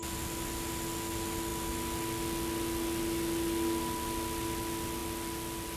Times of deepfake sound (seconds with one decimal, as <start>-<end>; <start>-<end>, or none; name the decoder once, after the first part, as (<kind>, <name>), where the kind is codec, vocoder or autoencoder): none